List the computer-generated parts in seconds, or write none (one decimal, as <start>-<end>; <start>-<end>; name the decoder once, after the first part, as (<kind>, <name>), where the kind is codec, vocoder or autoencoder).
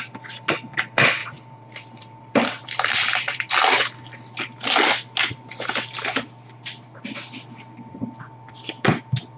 1.2-3.5 (vocoder, BigVGAN v2)